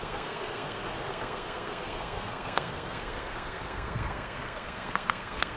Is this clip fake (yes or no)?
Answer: yes